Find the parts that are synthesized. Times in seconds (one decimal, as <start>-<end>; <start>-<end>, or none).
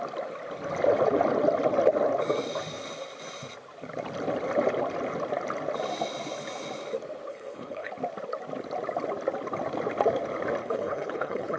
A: 7.3-7.9; 10.6-11.6